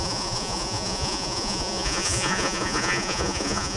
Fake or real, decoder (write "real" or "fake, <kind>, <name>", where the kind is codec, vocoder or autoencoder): fake, vocoder, Vocos